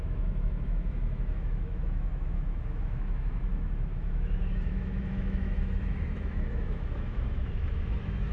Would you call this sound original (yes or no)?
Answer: no